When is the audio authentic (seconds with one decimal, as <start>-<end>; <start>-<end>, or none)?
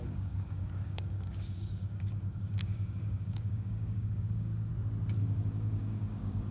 4.7-5.2